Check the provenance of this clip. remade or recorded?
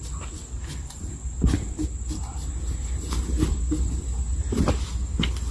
recorded